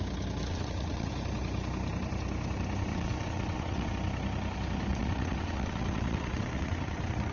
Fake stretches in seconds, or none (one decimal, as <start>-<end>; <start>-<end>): 0.5-1.1; 2.9-3.9; 4.9-7.3